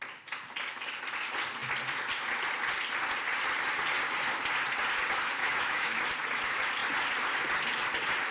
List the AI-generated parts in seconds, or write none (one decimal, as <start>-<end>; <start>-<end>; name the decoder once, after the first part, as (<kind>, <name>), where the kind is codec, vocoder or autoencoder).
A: 5.4-6.0 (autoencoder, DAC-VAE)